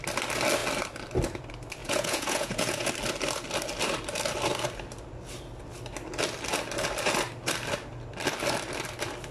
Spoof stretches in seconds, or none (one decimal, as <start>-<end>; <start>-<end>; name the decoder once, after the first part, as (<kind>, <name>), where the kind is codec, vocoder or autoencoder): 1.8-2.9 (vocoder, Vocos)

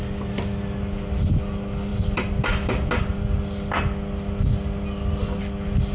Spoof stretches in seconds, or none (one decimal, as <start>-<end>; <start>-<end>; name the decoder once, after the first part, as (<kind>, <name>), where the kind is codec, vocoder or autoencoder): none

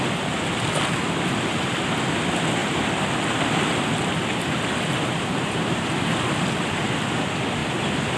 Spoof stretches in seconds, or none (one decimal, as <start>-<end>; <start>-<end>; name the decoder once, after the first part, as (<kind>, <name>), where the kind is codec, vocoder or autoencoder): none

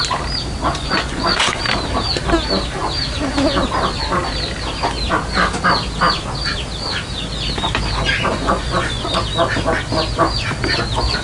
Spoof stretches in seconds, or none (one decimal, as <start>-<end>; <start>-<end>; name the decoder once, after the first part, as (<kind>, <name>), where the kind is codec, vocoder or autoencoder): 0.7-1.6 (vocoder, Vocos); 8.3-9.0

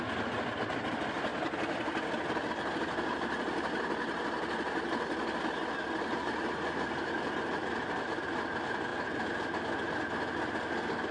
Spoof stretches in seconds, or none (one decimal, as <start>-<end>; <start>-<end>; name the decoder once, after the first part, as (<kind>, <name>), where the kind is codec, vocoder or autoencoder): none

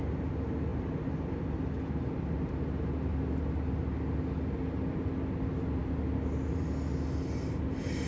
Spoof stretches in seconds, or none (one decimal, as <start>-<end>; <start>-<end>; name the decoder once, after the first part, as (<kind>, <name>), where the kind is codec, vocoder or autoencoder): none